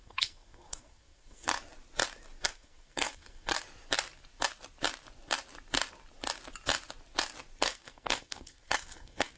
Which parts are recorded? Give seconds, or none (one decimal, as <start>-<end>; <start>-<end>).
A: 1.5-2.4; 3.5-7.6